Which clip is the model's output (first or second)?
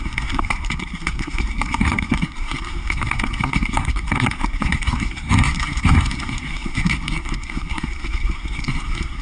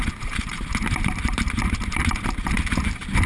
first